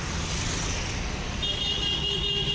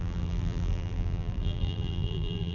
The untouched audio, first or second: first